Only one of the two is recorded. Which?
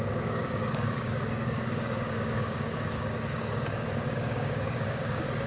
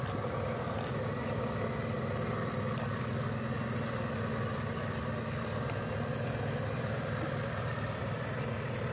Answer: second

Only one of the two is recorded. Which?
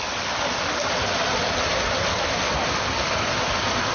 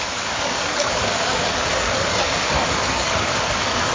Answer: first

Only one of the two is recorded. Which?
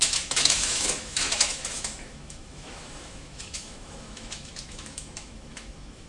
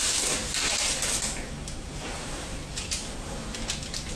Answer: second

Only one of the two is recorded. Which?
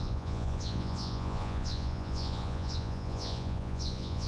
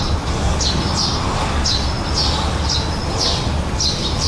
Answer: second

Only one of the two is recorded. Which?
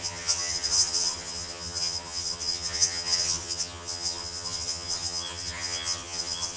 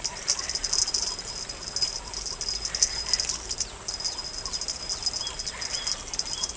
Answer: second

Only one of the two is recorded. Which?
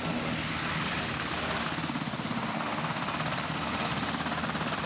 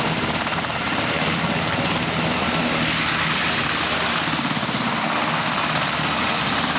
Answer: second